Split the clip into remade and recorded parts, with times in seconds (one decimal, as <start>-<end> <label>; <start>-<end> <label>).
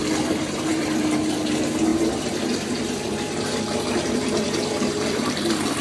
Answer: 0.0-5.8 remade